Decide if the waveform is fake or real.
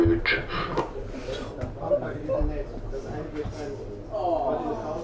real